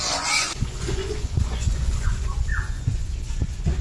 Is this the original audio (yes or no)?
no